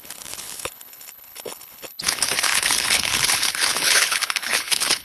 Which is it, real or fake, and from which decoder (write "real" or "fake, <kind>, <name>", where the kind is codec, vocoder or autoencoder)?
fake, codec, HILCodec